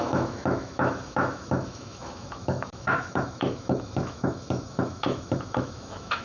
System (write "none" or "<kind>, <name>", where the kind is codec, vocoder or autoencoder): autoencoder, DAC-VAE